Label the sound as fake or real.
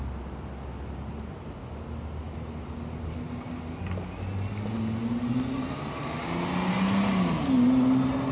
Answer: real